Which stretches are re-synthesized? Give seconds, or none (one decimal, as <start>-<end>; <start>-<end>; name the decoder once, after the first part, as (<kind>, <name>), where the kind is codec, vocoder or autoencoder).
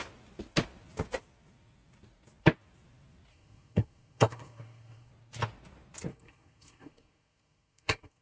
3.3-5.1 (codec, SNAC); 6.1-8.2